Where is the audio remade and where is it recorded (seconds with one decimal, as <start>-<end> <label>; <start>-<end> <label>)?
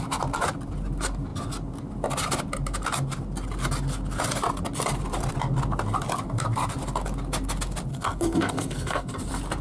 0.0-7.9 recorded; 7.9-9.1 remade; 9.1-9.6 recorded